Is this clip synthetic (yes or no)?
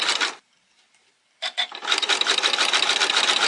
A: no